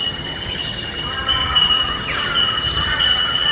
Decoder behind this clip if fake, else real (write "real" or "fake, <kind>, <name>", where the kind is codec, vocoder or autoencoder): fake, vocoder, HiFi-GAN